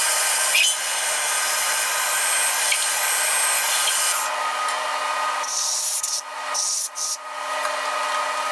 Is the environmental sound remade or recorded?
recorded